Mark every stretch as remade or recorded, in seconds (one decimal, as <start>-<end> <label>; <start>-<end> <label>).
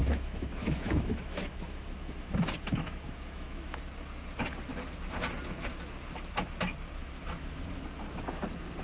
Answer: 0.0-3.8 remade; 3.8-7.0 recorded; 7.0-7.8 remade; 7.8-8.8 recorded